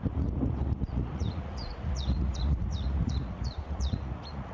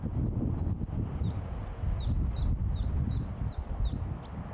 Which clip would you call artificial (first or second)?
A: first